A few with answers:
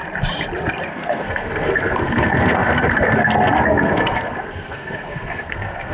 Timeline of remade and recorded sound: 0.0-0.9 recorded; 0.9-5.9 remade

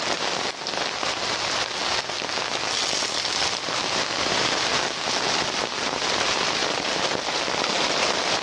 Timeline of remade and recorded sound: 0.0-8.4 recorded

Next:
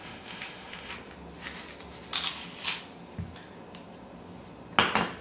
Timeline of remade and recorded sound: 0.0-0.9 remade; 0.9-5.2 recorded

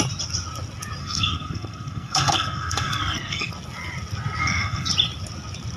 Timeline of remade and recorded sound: 0.0-1.0 recorded; 1.0-3.5 remade; 3.5-4.4 recorded; 4.4-4.9 remade; 4.9-5.8 recorded